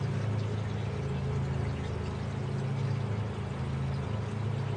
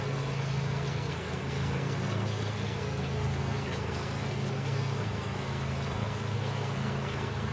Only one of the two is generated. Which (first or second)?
second